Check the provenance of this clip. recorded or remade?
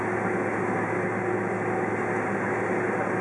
recorded